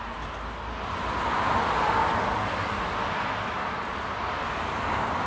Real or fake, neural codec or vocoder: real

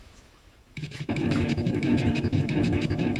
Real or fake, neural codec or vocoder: fake, autoencoder, DAC-VAE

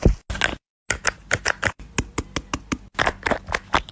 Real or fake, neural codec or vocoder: real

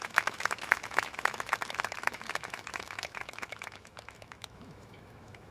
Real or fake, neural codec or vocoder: fake, autoencoder, DAC-VAE